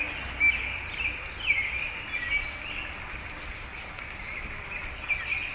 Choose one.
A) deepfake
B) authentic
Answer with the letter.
B